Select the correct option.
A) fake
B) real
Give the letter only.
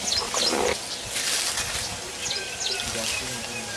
B